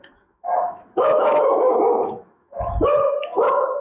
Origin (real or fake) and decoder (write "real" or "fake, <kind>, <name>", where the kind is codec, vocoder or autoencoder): fake, autoencoder, DAC-VAE